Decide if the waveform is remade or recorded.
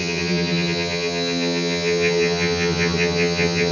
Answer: remade